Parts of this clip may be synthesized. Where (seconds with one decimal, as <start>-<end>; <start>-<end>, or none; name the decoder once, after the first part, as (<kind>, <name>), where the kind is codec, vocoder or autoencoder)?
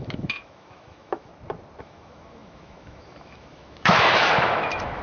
0.0-1.3 (autoencoder, DAC-VAE); 1.8-5.0